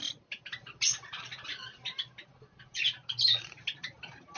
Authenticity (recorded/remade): recorded